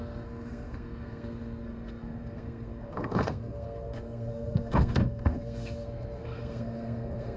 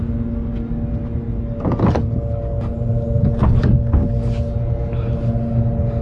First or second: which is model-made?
first